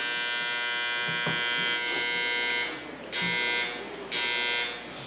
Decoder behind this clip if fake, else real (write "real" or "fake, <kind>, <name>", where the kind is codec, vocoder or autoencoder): real